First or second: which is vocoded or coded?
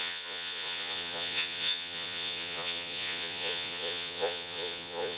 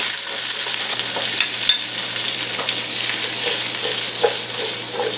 first